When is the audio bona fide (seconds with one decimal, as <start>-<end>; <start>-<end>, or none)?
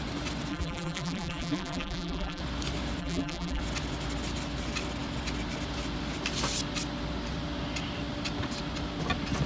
0.0-0.5; 2.4-3.0; 3.6-9.5